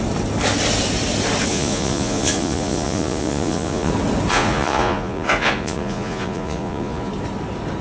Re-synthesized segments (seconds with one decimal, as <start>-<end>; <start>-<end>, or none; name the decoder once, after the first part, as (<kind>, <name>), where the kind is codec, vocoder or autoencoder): 1.5-3.9 (vocoder, Vocos); 4.3-7.1